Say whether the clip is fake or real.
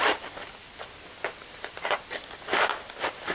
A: fake